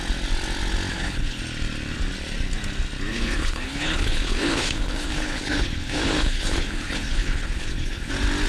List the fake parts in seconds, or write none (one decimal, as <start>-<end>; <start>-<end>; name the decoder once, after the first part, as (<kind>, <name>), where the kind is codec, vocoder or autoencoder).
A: 0.9-1.4 (codec, HILCodec); 3.1-8.1

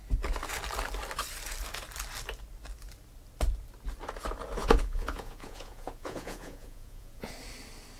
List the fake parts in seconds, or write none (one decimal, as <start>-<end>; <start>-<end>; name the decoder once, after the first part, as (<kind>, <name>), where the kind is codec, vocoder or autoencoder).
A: 4.6-7.3 (vocoder, Vocos)

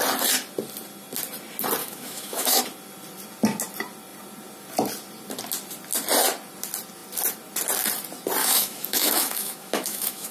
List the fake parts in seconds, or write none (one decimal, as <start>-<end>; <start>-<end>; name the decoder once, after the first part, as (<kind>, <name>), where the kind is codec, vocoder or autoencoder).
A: 1.8-2.6 (autoencoder, DAC-VAE); 8.4-10.3

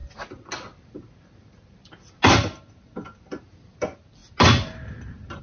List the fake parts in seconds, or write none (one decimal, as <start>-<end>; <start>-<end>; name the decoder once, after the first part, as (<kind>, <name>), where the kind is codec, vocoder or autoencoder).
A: none